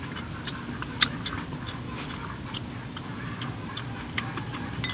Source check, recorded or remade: recorded